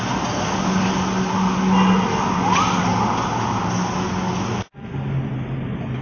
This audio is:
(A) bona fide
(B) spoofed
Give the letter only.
A